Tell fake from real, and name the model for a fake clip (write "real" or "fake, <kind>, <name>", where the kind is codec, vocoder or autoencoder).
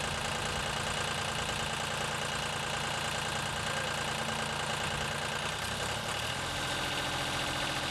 real